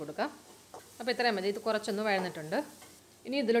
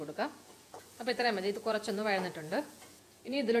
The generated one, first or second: second